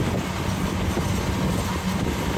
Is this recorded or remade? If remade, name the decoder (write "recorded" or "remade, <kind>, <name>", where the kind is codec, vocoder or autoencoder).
recorded